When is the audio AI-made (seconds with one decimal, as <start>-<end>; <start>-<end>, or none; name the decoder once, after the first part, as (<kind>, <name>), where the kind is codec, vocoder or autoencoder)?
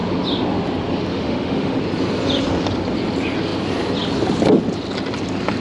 1.1-1.8 (autoencoder, DAC-VAE)